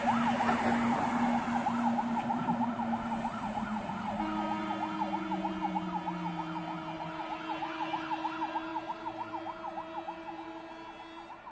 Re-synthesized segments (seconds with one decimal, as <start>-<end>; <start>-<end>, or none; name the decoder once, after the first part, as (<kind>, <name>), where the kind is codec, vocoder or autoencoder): 3.3-4.1 (vocoder, Vocos)